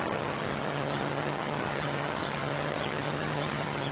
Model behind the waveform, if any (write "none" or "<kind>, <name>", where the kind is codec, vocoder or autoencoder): vocoder, HiFi-GAN